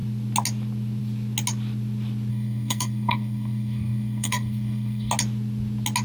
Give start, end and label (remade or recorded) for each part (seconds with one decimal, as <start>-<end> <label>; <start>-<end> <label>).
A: 0.0-2.3 recorded; 2.3-5.1 remade; 5.1-6.0 recorded